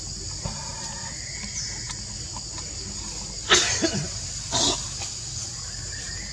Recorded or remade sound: recorded